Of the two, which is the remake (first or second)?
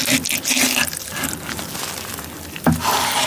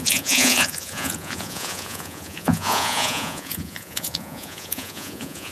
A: second